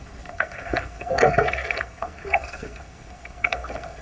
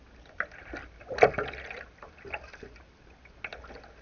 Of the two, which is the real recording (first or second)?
second